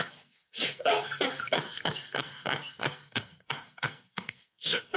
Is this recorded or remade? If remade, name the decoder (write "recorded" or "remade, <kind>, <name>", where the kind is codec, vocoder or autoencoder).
remade, codec, SNAC